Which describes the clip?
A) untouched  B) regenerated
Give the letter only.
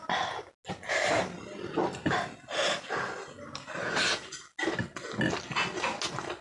A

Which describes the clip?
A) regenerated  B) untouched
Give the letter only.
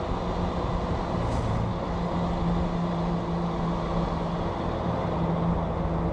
B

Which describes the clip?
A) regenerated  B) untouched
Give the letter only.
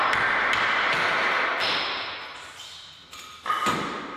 B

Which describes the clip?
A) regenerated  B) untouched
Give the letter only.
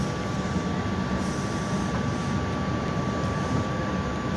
B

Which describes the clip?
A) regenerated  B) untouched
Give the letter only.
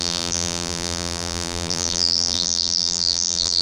A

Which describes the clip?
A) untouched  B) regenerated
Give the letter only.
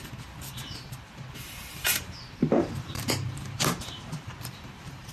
B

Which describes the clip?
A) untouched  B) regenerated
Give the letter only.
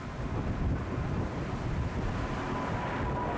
A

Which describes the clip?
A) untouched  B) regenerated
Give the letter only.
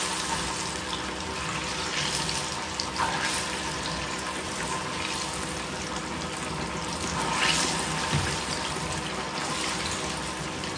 A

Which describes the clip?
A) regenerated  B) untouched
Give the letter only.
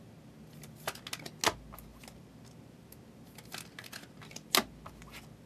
B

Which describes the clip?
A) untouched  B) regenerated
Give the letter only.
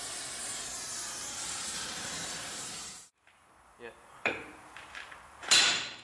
B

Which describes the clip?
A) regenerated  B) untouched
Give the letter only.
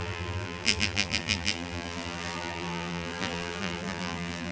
A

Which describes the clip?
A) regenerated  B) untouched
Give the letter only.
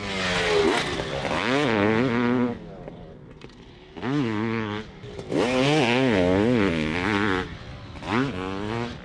B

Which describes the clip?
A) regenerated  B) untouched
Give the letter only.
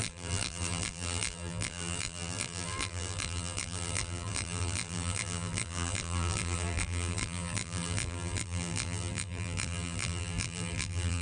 A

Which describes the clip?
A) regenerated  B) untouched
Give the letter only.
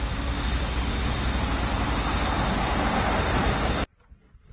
B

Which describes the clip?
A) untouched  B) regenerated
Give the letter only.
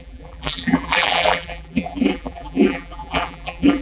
B